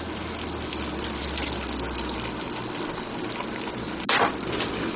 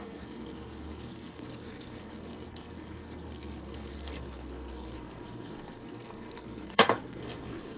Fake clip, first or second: second